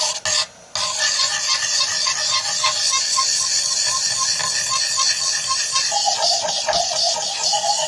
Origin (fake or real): real